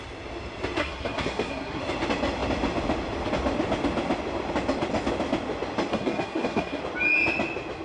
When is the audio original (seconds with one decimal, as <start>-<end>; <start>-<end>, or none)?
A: 0.0-0.8; 1.8-5.9; 6.8-7.8